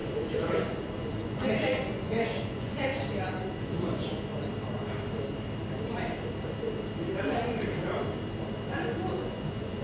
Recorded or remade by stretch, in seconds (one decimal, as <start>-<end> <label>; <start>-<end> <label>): 0.0-2.9 remade; 2.9-3.6 recorded; 3.6-4.3 remade; 4.3-9.1 recorded; 9.1-9.8 remade